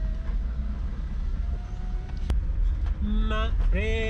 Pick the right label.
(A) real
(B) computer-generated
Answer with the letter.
A